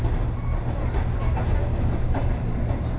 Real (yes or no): yes